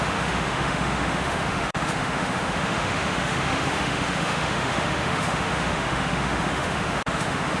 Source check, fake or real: fake